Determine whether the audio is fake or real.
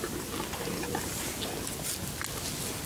real